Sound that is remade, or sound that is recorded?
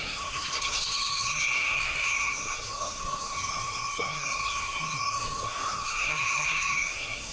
remade